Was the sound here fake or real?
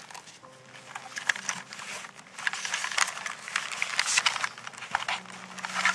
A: real